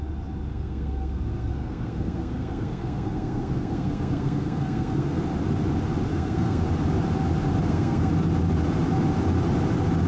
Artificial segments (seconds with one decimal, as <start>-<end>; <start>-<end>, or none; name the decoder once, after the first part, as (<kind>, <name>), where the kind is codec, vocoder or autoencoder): 0.5-5.2 (codec, SNAC); 6.1-6.6; 7.6-8.1